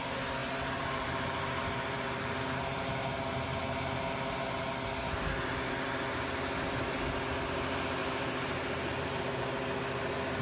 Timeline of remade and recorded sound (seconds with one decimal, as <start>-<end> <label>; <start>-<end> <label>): 0.0-0.4 recorded; 0.4-2.9 remade; 2.9-8.0 recorded; 8.0-9.2 remade; 9.2-10.4 recorded